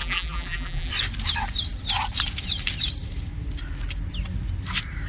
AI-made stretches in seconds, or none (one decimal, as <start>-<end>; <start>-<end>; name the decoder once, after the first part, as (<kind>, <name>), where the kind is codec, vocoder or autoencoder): 0.0-0.9 (vocoder, BigVGAN v2)